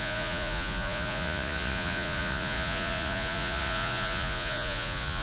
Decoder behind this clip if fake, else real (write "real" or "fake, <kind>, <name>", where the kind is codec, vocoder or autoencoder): fake, vocoder, Vocos